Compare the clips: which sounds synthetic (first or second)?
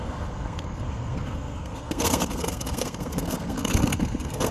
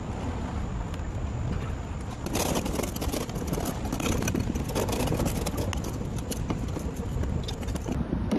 first